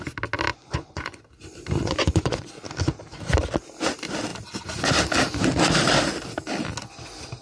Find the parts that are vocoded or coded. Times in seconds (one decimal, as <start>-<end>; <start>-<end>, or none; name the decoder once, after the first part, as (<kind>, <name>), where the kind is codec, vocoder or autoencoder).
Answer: 0.5-1.2 (vocoder, Vocos); 1.8-2.5